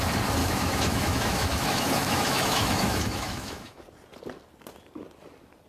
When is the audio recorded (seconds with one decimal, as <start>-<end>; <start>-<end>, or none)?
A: 0.0-0.4; 3.8-5.7